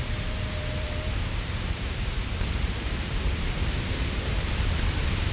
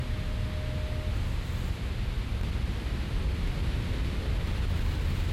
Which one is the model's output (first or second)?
first